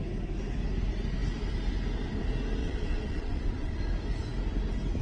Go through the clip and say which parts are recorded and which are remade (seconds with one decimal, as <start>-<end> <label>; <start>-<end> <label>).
0.0-2.6 recorded; 2.6-3.8 remade; 3.8-5.0 recorded